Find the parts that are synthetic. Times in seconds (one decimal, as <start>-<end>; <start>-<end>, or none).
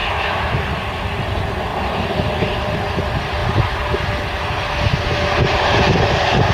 0.0-0.6